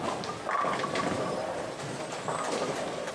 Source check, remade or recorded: recorded